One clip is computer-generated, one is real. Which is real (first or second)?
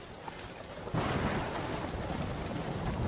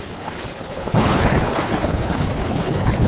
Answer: first